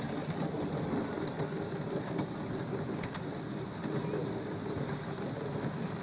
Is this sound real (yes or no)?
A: yes